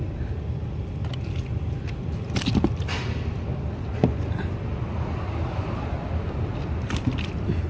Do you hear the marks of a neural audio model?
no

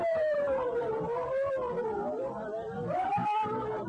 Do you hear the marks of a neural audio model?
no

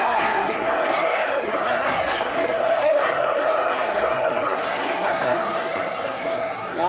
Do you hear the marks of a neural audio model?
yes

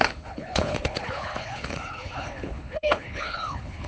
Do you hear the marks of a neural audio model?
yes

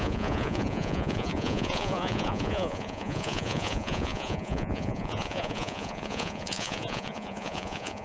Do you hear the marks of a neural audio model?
yes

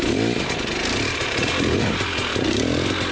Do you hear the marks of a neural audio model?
yes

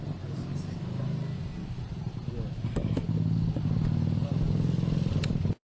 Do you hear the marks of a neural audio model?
no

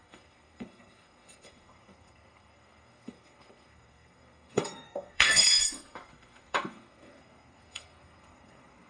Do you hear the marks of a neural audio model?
yes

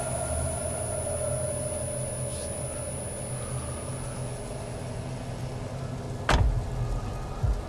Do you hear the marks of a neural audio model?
no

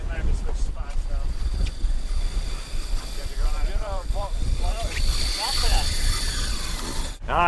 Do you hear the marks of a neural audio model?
yes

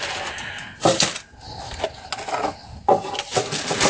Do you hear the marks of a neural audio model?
no